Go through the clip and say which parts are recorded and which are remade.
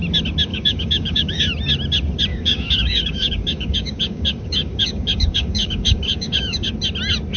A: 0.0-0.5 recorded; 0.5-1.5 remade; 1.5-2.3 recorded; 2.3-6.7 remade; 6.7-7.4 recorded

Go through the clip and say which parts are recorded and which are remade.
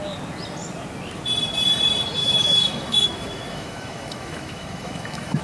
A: 0.0-2.2 recorded; 2.2-5.4 remade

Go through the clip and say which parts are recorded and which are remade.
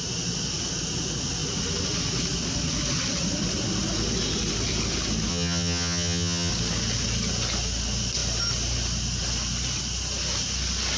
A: 0.0-5.3 recorded; 5.3-6.5 remade; 6.5-11.0 recorded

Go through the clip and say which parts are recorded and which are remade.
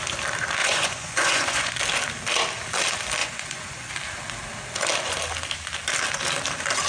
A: 0.0-0.6 recorded; 0.6-1.8 remade; 1.8-3.2 recorded; 3.2-3.9 remade; 3.9-6.9 recorded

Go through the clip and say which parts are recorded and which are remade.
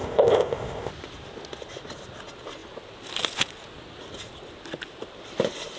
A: 0.0-0.9 remade; 0.9-5.8 recorded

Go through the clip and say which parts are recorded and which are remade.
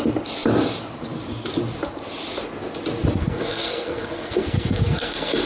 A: 0.0-3.2 recorded; 3.2-5.5 remade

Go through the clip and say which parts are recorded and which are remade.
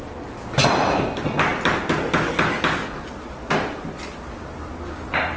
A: 0.0-5.4 recorded